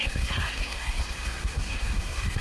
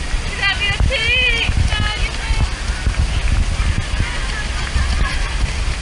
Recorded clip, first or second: second